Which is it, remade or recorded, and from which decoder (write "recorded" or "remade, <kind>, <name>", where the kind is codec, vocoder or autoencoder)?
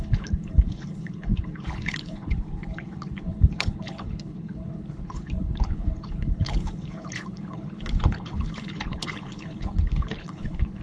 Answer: remade, codec, HILCodec